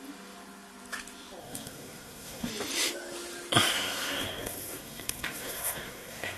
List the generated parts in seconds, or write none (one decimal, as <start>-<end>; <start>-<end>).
1.4-2.5; 3.7-6.4